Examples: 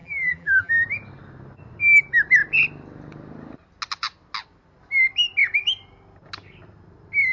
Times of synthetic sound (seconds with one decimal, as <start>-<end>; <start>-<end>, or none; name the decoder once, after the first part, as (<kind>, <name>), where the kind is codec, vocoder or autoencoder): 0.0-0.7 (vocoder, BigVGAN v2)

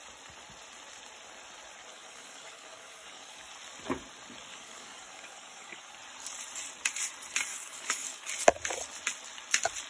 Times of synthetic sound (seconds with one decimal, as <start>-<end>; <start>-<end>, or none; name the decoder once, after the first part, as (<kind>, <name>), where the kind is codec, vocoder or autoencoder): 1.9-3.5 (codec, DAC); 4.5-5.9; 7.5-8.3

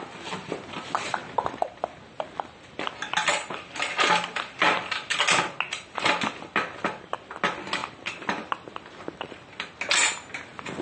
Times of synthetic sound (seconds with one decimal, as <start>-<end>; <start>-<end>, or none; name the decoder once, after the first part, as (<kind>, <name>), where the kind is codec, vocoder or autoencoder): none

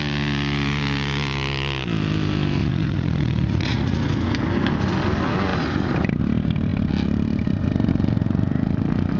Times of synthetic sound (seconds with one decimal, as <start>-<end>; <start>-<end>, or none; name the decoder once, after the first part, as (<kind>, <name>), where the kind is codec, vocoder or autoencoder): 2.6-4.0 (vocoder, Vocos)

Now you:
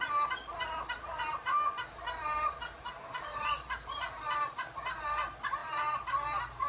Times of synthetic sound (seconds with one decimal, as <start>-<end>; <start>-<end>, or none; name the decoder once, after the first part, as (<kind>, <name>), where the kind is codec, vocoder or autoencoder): 0.6-4.6 (vocoder, BigVGAN v2)

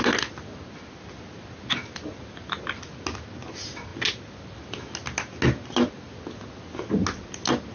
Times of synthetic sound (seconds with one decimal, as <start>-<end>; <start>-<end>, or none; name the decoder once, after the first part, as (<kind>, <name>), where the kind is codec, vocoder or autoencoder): none